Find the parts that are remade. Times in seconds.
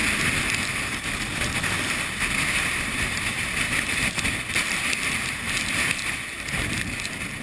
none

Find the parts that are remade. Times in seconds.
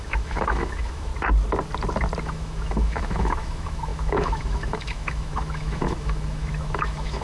0.0-1.1 (autoencoder, DAC-VAE); 2.2-7.2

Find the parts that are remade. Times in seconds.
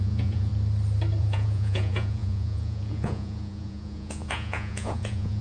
0.0-0.5 (vocoder, Vocos); 1.2-5.4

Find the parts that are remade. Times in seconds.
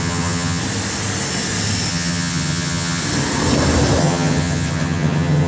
0.0-0.6 (vocoder, HiFi-GAN); 1.9-3.0; 4.0-5.5